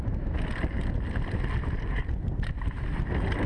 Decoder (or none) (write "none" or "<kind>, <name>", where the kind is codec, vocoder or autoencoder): none